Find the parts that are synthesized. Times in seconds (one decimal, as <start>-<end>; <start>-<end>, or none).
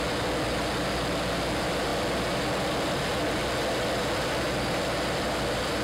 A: none